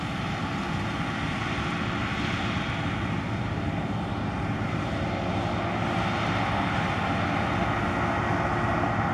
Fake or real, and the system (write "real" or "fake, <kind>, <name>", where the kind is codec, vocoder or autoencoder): real